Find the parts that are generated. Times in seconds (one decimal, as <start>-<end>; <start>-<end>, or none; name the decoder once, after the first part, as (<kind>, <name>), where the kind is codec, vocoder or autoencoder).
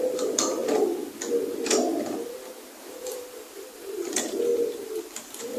0.0-0.6 (vocoder, BigVGAN v2); 2.9-5.6